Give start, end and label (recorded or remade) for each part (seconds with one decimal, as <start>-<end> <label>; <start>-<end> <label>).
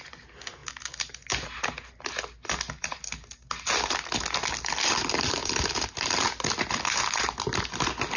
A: 0.0-8.2 recorded